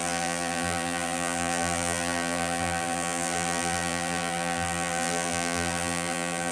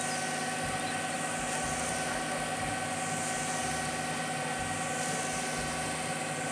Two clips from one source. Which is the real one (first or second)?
second